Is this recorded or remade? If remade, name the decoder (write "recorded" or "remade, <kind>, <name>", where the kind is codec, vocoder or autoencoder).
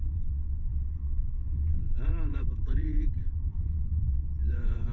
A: remade, vocoder, WaveNeXt